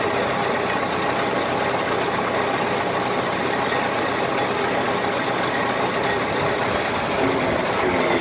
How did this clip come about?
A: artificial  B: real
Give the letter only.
B